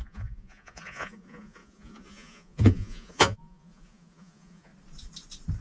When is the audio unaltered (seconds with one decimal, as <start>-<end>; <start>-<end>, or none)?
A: 4.7-5.6